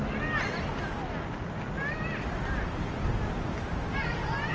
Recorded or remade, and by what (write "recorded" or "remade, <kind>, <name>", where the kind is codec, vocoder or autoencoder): recorded